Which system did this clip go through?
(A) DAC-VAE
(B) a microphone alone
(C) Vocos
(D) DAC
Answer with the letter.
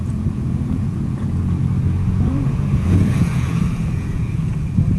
C